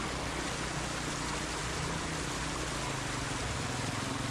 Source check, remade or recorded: recorded